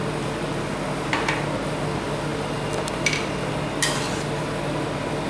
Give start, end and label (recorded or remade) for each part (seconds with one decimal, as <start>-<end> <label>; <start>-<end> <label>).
0.0-5.3 recorded